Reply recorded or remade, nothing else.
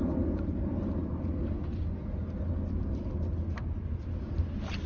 recorded